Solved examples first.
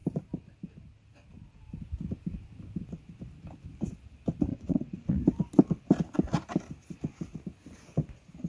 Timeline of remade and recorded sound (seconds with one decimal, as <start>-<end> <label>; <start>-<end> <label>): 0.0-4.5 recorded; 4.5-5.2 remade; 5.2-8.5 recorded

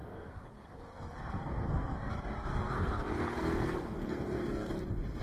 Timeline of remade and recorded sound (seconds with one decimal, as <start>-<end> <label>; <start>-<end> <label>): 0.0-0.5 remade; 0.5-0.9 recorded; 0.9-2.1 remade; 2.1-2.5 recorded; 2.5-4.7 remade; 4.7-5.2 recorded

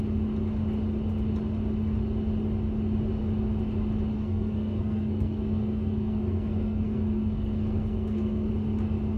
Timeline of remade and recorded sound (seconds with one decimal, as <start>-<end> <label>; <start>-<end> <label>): 0.0-4.1 recorded; 4.1-8.5 remade; 8.5-9.2 recorded

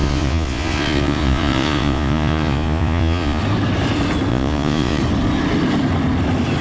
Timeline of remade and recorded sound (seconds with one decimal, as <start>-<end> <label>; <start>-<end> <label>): 0.0-3.4 remade; 3.4-4.3 recorded; 4.3-5.0 remade; 5.0-6.6 recorded

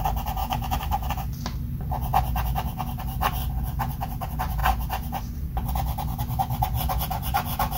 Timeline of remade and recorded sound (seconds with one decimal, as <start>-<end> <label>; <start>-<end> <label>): 0.0-0.4 recorded; 0.4-1.1 remade; 1.1-7.8 recorded